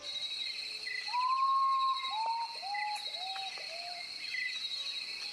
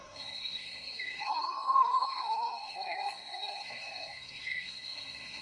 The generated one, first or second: second